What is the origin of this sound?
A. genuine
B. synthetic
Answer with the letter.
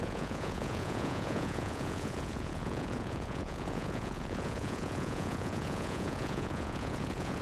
B